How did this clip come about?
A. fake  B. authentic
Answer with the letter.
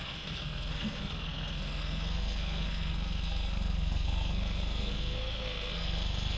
A